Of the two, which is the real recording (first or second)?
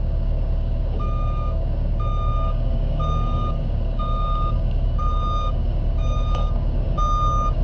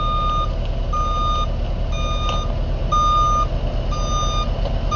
second